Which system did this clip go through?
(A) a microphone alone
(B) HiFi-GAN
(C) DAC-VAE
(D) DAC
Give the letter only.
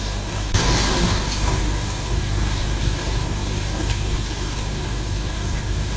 D